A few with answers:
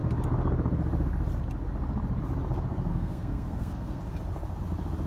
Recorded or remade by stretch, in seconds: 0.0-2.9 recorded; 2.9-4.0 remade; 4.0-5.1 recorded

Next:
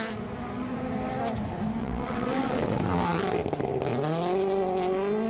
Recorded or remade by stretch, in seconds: 0.0-1.8 recorded; 1.8-2.8 remade; 2.8-5.3 recorded

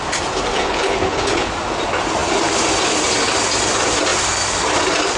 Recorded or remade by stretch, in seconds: 0.0-0.5 recorded; 0.5-1.5 remade; 1.5-5.2 recorded